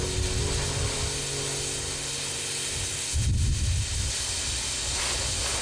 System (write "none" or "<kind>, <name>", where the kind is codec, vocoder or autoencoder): none